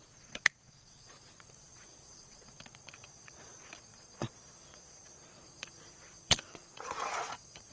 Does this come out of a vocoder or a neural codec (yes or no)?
yes